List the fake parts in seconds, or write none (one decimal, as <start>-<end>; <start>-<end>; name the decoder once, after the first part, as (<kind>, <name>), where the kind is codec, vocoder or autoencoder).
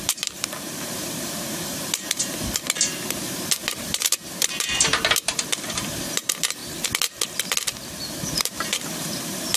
0.0-6.6 (vocoder, BigVGAN v2); 8.4-9.6